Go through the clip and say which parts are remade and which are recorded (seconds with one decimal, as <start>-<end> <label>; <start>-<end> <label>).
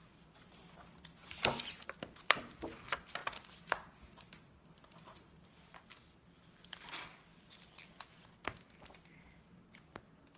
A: 0.0-10.4 recorded